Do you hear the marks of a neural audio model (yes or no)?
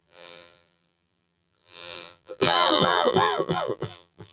yes